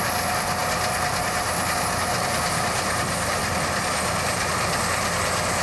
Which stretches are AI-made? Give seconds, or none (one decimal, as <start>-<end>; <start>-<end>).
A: none